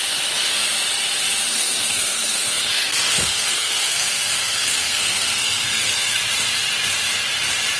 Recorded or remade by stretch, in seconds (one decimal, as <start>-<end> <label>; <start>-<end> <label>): 0.0-1.5 recorded; 1.5-6.2 remade; 6.2-7.8 recorded